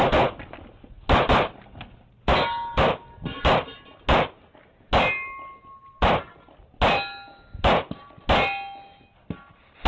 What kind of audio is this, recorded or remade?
recorded